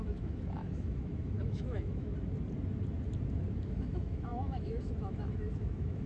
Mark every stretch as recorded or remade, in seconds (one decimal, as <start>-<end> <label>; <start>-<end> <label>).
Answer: 0.0-2.1 remade; 2.1-3.6 recorded; 3.6-6.1 remade